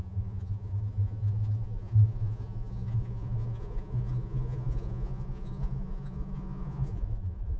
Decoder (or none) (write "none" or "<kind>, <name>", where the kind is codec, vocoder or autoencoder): vocoder, Vocos